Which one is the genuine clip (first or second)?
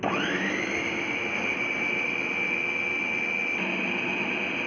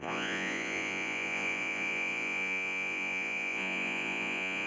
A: first